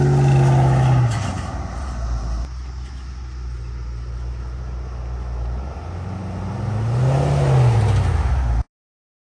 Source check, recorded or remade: recorded